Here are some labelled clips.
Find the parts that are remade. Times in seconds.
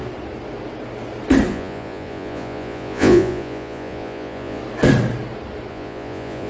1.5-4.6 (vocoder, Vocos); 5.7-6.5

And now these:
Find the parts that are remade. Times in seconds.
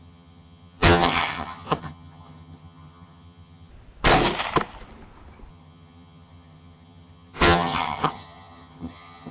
0.0-3.7 (vocoder, HiFi-GAN); 5.5-9.3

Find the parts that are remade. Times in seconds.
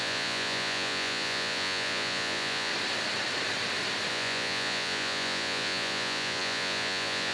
0.0-2.7 (vocoder, Vocos); 4.1-7.3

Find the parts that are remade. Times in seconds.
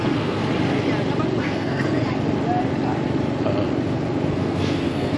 0.0-0.4 (codec, SNAC); 1.4-1.9; 4.3-5.2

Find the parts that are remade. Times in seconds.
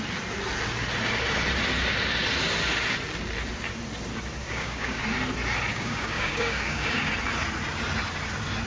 4.4-5.0 (codec, DAC); 5.7-7.1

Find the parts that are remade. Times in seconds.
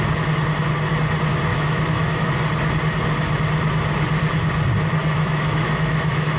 1.5-2.3 (autoencoder, DAC-VAE); 5.0-6.4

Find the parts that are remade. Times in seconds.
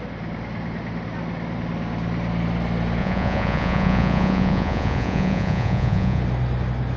3.0-6.2 (vocoder, Vocos)